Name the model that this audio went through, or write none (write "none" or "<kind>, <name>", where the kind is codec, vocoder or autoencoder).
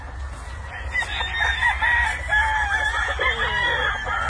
none